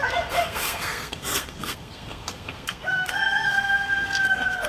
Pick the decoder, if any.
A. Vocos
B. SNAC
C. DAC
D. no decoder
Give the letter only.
B